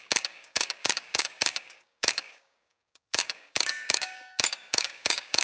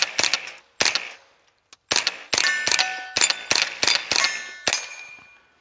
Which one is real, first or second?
second